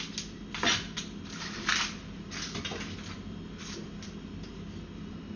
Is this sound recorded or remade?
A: recorded